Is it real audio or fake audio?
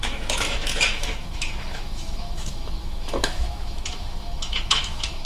fake